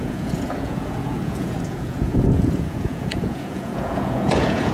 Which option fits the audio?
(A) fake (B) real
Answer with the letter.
A